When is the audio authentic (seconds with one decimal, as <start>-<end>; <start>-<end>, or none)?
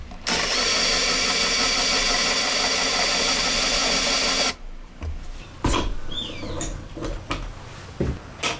0.0-8.6